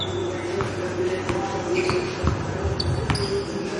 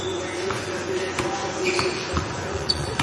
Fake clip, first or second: second